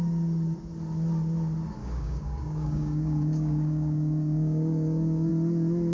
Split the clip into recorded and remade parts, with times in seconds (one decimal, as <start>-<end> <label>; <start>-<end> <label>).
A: 0.0-1.8 recorded; 1.8-5.3 remade; 5.3-5.9 recorded